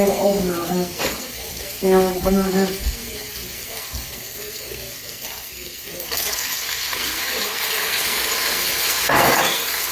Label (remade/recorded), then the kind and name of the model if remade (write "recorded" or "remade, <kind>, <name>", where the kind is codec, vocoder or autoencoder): remade, codec, SNAC